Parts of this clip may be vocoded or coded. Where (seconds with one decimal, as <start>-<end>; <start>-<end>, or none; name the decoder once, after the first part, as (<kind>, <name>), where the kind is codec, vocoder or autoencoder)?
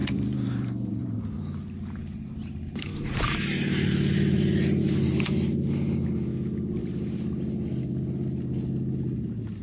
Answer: 0.0-1.2 (vocoder, BigVGAN v2); 2.9-4.8; 6.8-7.4